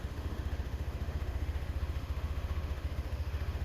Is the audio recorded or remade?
remade